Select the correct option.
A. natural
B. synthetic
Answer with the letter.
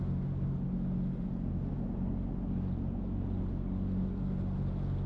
A